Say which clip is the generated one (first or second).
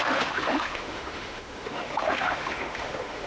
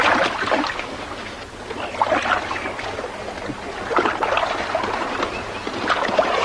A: first